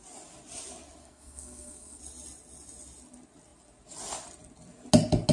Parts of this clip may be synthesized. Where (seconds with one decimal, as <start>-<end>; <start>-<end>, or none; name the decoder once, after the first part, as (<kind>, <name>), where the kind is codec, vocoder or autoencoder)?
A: 1.0-2.0 (codec, SNAC)